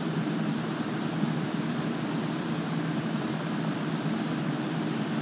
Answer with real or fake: real